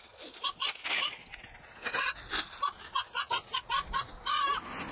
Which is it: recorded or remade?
recorded